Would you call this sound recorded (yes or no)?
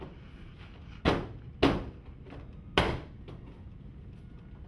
yes